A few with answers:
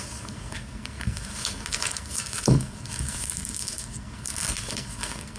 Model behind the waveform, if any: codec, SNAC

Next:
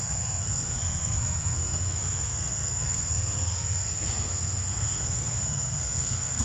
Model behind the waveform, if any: codec, SNAC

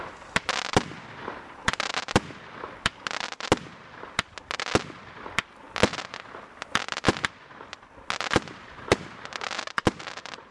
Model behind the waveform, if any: none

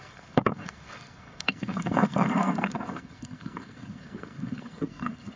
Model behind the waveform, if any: codec, SNAC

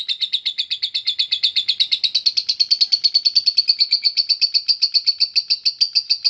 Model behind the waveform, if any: none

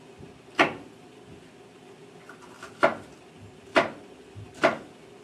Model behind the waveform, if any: none